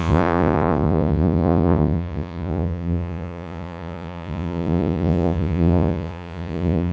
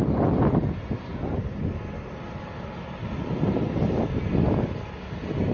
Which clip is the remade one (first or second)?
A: first